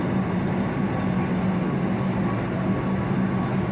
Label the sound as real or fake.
real